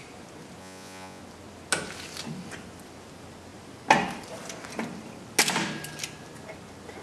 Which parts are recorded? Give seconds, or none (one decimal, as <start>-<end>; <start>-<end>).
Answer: 0.0-0.6; 1.2-7.0